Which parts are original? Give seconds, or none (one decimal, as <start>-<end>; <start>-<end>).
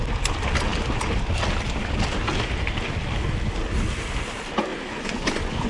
0.0-4.7